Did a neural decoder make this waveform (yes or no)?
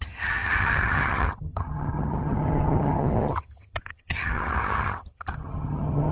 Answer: yes